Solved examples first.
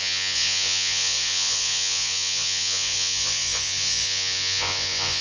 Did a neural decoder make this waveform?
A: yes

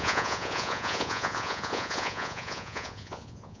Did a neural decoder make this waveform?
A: yes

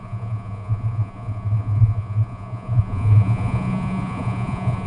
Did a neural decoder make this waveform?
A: yes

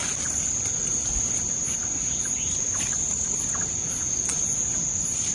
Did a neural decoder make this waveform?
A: no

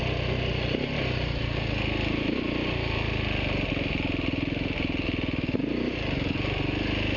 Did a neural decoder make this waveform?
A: no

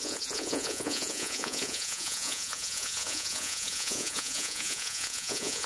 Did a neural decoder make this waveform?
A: yes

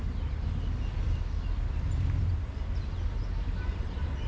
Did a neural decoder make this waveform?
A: no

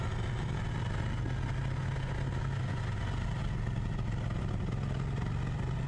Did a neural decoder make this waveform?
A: no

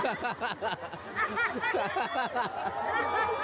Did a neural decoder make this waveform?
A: no